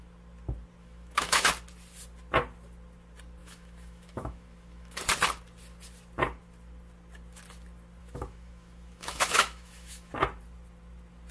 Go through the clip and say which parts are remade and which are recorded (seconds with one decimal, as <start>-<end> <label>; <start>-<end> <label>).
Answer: 0.0-0.8 recorded; 0.8-1.5 remade; 1.5-3.4 recorded; 3.4-5.0 remade; 5.0-8.0 recorded; 8.0-10.1 remade; 10.1-11.3 recorded